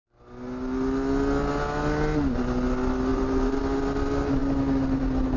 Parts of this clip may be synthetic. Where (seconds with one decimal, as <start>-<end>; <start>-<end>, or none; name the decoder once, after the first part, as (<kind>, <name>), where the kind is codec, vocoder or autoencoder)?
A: 3.1-3.6 (vocoder, BigVGAN v2)